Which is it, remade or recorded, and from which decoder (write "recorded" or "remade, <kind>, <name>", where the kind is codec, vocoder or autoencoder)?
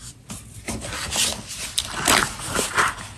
remade, vocoder, BigVGAN v2